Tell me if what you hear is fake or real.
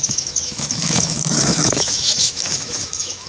fake